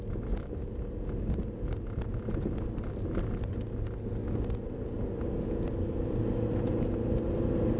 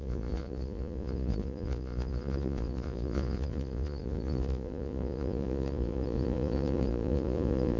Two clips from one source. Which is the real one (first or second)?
first